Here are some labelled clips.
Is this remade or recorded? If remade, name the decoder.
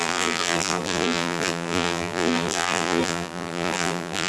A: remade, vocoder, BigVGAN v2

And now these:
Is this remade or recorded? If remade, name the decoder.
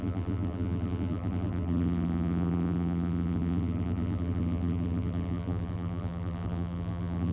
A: remade, vocoder, BigVGAN v2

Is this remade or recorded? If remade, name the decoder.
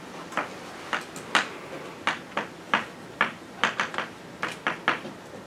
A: recorded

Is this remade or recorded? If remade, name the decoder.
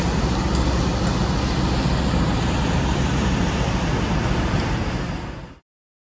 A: recorded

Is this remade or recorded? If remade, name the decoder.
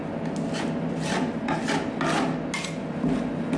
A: recorded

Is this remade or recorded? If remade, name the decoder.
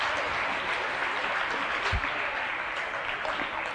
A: recorded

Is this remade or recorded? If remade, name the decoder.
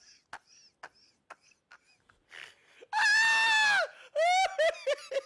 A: recorded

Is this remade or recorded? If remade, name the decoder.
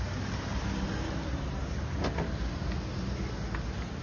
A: recorded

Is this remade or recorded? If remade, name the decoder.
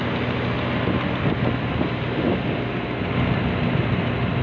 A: recorded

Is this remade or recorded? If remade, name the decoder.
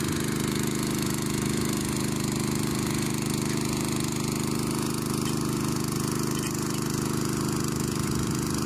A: recorded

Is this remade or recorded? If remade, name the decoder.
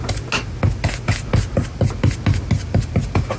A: recorded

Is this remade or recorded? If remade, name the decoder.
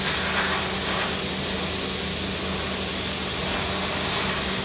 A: recorded